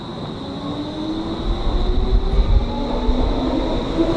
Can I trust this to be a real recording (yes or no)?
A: yes